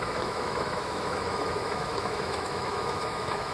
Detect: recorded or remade remade